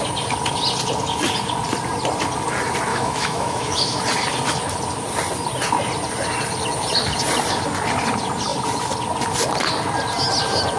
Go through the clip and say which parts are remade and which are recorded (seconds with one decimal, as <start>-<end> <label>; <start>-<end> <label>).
0.0-2.9 recorded; 2.9-4.0 remade; 4.0-10.8 recorded